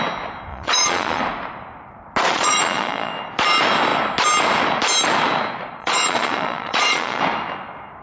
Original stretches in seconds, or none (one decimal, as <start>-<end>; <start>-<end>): 0.0-0.5; 1.2-2.3; 3.1-5.8; 7.2-8.0